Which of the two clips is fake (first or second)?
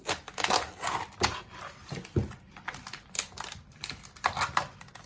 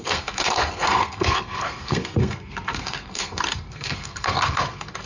second